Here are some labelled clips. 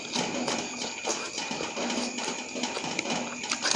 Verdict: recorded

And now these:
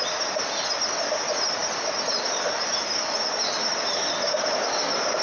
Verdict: recorded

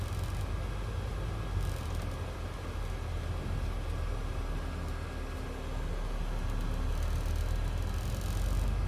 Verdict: recorded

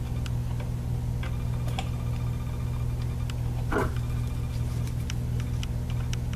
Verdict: recorded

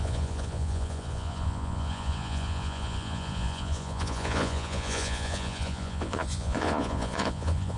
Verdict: remade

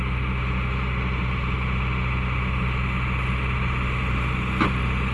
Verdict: recorded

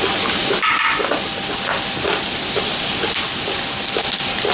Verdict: recorded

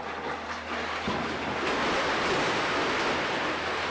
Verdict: recorded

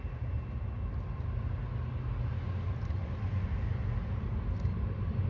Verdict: recorded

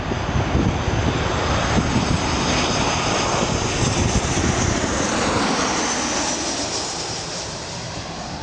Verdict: recorded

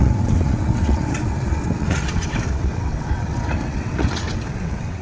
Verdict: remade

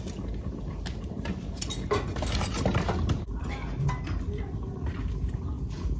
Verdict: recorded